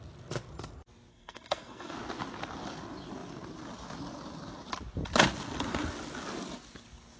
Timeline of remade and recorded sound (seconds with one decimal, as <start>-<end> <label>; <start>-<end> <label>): 0.0-1.1 recorded; 1.1-1.9 remade; 1.9-7.2 recorded